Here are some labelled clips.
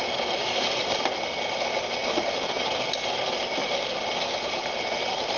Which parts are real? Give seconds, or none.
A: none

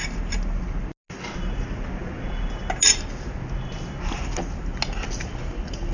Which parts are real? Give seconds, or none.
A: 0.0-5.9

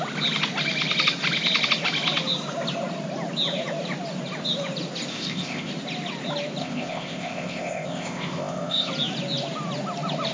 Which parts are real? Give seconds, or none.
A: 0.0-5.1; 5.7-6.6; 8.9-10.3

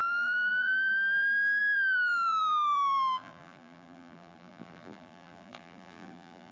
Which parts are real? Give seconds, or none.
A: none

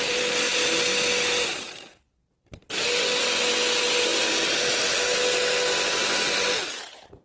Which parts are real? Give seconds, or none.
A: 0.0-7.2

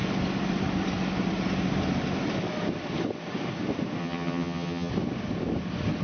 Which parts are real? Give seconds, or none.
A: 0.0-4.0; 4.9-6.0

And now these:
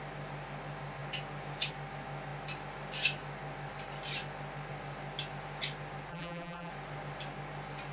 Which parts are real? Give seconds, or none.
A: 0.0-6.1; 6.7-7.9

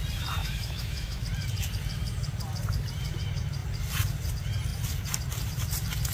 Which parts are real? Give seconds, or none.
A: 0.0-0.4; 1.2-6.1